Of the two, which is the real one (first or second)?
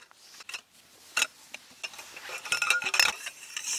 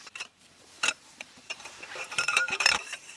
first